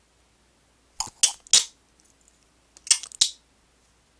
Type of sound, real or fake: real